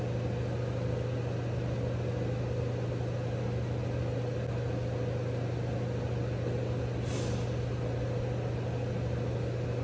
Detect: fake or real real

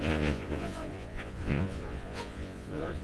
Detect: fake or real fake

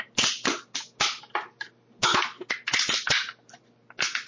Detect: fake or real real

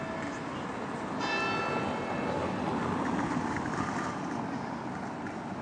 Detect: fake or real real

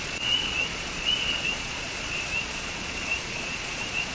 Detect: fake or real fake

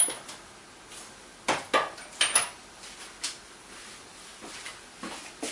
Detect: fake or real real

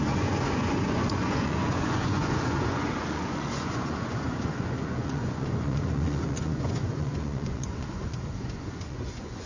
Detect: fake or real fake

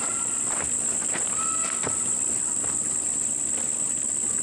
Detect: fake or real real